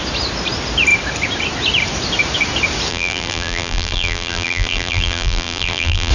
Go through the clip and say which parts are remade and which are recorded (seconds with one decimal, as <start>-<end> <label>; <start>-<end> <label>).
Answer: 0.0-2.9 recorded; 2.9-6.1 remade